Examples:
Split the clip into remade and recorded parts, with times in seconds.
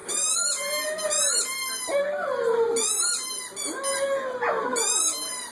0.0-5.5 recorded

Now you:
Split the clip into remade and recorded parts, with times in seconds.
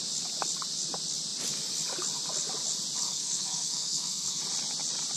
0.0-3.0 recorded; 3.0-4.4 remade; 4.4-5.2 recorded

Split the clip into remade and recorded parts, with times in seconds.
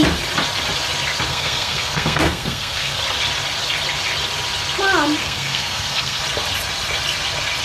0.0-1.3 recorded; 1.3-3.0 remade; 3.0-5.2 recorded; 5.2-6.2 remade; 6.2-7.6 recorded